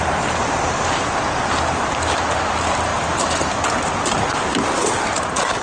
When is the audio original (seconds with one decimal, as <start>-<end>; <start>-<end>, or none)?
0.0-5.6